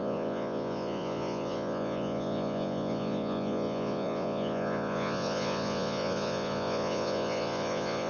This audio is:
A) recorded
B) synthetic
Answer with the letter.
B